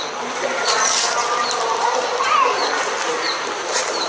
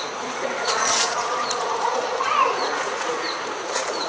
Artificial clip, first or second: second